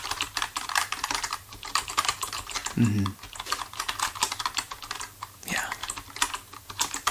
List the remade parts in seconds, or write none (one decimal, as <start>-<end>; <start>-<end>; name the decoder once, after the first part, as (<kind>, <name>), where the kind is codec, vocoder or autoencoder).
0.0-2.6 (vocoder, BigVGAN v2); 4.0-5.8; 6.6-7.1